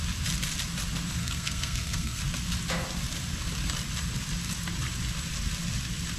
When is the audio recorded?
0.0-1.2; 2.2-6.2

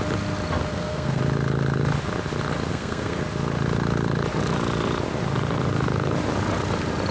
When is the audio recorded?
0.0-0.7; 1.2-2.7; 3.2-7.1

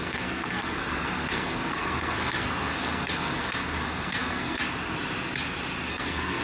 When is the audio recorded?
4.6-5.9

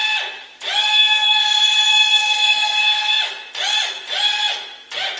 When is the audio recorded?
0.0-0.8; 1.4-1.9; 2.8-5.2

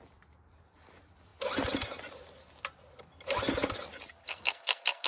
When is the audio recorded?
0.0-4.2

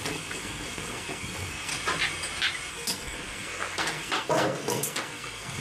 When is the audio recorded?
1.7-2.7

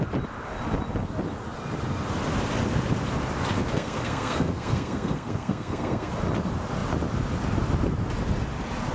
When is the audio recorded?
0.0-3.7; 6.1-8.9